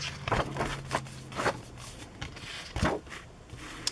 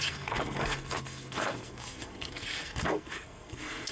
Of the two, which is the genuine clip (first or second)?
first